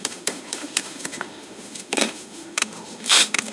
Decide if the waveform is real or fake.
fake